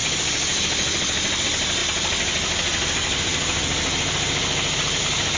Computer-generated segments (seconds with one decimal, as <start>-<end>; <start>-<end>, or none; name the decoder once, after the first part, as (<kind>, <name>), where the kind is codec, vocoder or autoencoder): none